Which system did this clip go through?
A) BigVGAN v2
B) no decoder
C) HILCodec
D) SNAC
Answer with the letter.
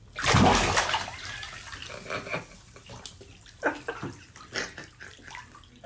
B